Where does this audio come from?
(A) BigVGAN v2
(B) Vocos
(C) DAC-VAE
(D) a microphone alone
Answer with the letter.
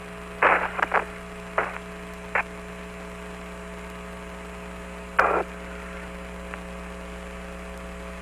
D